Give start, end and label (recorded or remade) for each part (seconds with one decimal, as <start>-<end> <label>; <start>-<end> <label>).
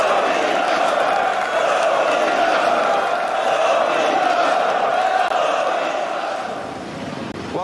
0.0-7.6 recorded